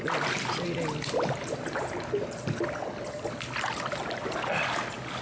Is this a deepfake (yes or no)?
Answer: no